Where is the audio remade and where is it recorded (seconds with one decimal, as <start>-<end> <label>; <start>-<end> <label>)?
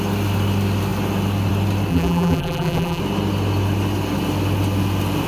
0.0-1.9 recorded; 1.9-3.0 remade; 3.0-5.3 recorded